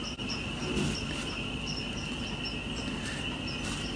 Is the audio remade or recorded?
recorded